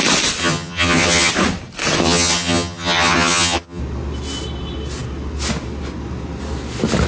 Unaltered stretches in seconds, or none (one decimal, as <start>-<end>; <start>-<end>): 0.0-0.4; 1.3-2.0; 3.8-7.1